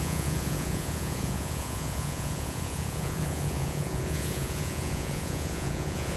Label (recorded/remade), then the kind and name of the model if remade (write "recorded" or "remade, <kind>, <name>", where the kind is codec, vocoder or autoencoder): remade, vocoder, Vocos